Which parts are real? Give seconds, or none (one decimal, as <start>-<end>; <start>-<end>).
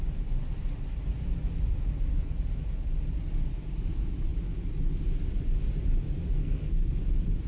0.0-6.4; 7.0-7.5